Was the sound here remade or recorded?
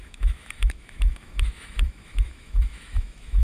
remade